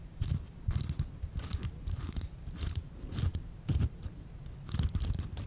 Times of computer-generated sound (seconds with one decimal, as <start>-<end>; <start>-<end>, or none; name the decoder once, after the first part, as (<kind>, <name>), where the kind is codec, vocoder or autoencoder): none